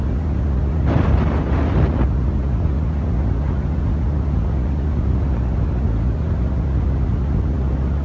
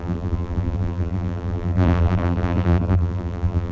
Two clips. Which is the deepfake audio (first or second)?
second